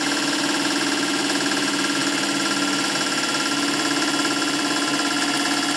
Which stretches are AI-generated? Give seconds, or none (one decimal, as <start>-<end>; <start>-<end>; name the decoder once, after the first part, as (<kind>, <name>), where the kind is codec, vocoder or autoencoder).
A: none